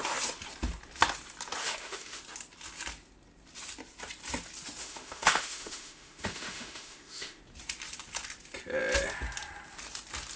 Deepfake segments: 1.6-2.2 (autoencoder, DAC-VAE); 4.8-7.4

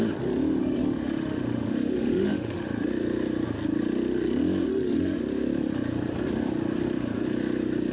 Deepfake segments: 0.6-2.7 (autoencoder, DAC-VAE); 4.7-5.2

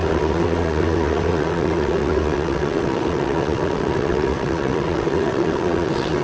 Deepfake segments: 0.0-6.2 (vocoder, WaveNeXt)

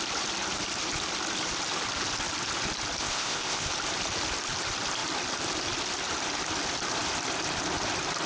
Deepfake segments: 3.0-3.7 (codec, ZipCodec)

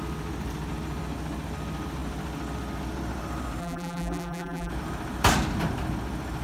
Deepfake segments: 3.6-4.7 (vocoder, BigVGAN v2)

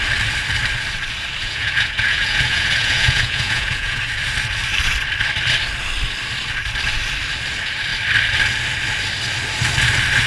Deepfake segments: 1.4-4.0 (vocoder, Vocos)

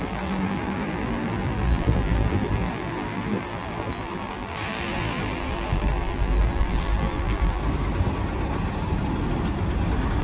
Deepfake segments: 0.0-7.6 (vocoder, BigVGAN v2)

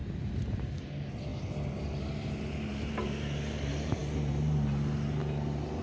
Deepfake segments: none